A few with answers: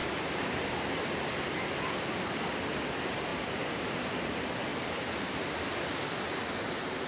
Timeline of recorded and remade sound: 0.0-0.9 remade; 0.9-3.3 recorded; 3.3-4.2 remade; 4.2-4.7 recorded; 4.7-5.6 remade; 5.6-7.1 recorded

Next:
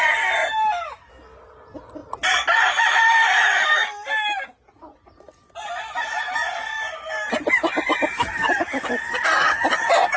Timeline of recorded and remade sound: 0.0-0.4 recorded; 0.4-1.1 remade; 1.1-8.3 recorded; 8.3-9.1 remade; 9.1-10.2 recorded

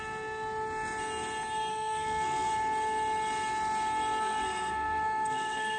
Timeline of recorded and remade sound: 0.0-1.7 recorded; 1.7-2.5 remade; 2.5-4.2 recorded; 4.2-5.8 remade

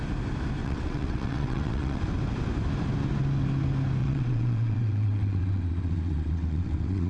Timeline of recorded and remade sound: 0.0-0.6 recorded; 0.6-2.0 remade; 2.0-4.0 recorded; 4.0-7.1 remade

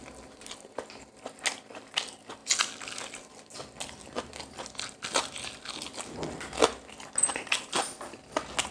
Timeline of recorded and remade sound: 0.0-8.7 recorded

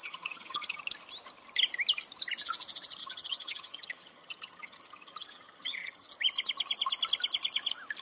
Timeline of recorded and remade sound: 0.0-0.8 remade; 0.8-3.0 recorded; 3.0-6.1 remade; 6.1-8.0 recorded